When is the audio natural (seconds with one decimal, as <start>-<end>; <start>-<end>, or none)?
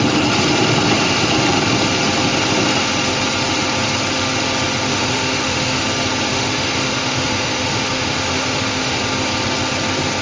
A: 0.0-4.9; 5.8-6.3; 9.0-10.2